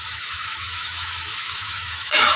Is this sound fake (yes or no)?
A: yes